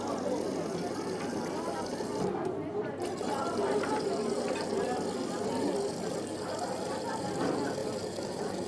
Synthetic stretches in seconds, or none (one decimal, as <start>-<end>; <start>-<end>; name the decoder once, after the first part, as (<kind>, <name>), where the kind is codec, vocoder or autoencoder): none

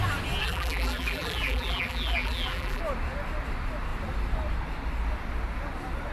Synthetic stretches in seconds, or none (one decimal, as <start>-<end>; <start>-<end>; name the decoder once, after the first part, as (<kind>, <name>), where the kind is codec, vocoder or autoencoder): 0.4-2.8 (vocoder, BigVGAN v2)

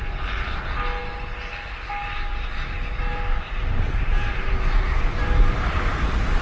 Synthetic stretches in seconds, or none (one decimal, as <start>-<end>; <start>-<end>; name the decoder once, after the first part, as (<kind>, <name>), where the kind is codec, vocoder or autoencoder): 2.3-6.4 (vocoder, BigVGAN v2)